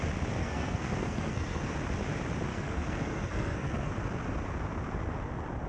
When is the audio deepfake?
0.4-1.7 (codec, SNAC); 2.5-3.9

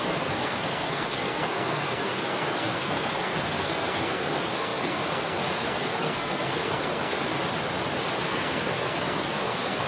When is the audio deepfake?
0.0-7.4 (codec, SNAC); 8.2-9.9

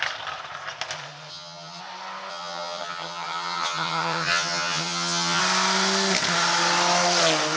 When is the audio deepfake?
1.3-1.8 (vocoder, HiFi-GAN); 2.3-5.4

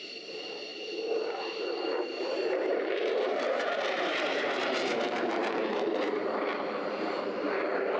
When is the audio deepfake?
0.0-8.0 (vocoder, BigVGAN v2)